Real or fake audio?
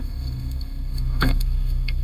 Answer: fake